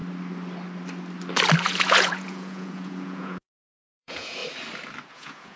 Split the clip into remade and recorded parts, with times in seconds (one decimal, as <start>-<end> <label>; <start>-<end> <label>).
0.0-1.6 recorded; 1.6-4.4 remade; 4.4-5.1 recorded; 5.1-5.6 remade